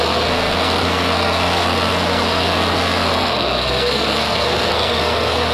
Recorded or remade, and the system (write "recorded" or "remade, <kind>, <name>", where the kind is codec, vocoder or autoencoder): remade, codec, SNAC